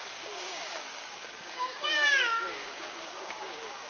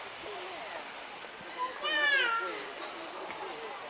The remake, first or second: first